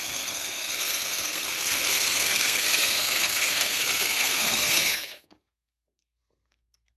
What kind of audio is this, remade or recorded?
remade